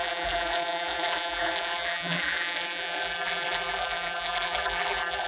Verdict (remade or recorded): remade